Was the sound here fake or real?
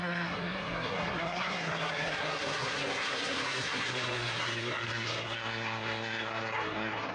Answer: fake